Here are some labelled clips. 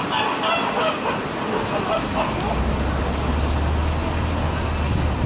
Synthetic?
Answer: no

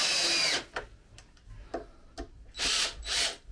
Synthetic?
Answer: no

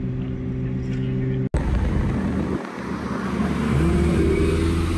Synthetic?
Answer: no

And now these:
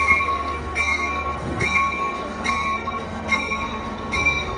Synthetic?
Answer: yes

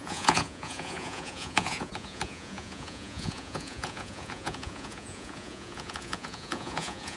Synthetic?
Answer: yes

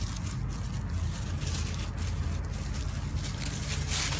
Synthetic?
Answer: no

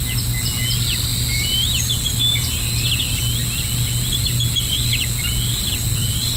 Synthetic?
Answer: no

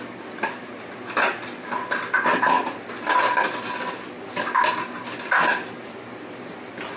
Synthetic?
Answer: no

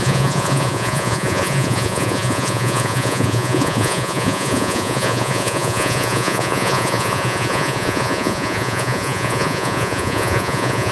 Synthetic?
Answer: yes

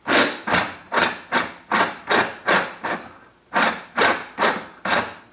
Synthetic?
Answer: no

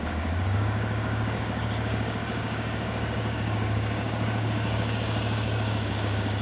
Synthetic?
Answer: yes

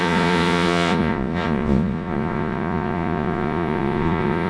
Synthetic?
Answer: yes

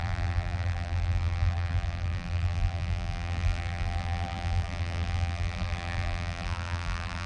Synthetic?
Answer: yes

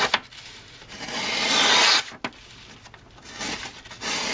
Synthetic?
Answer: no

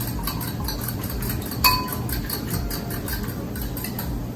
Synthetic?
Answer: no